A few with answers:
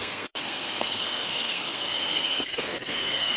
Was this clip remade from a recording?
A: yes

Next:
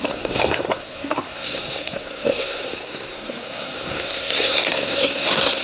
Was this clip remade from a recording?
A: yes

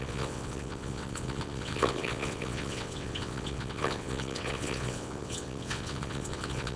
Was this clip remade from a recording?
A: yes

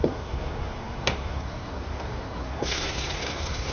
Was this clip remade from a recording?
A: yes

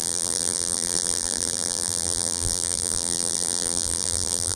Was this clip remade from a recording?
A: yes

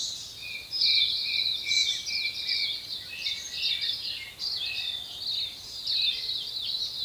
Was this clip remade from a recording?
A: no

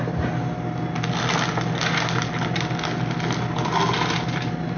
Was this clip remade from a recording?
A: no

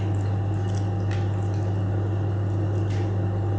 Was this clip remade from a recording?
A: no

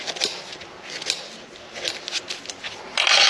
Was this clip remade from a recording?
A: no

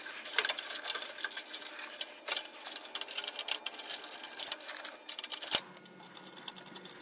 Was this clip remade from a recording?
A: no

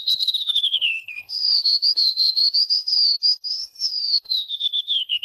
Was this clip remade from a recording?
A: yes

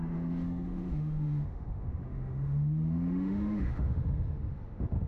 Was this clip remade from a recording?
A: yes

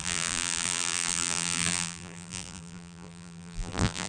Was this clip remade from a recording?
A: yes